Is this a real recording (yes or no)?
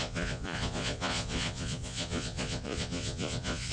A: no